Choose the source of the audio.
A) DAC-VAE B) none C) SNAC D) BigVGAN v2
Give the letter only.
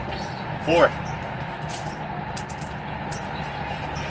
B